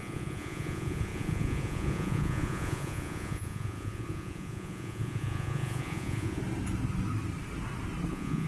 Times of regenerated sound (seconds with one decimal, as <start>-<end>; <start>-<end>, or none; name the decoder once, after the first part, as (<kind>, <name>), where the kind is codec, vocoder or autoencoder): 0.0-6.4 (vocoder, Vocos); 8.1-8.5